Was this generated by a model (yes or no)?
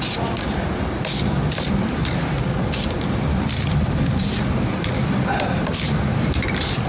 yes